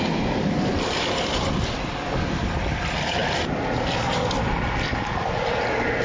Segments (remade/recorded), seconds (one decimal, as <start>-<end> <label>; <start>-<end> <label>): 0.0-6.0 recorded